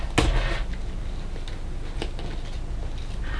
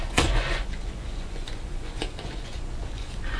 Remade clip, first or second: second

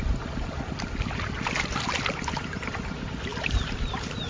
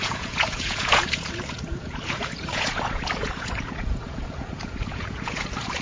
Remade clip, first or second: second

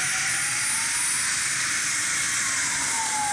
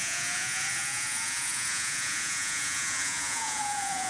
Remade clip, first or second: second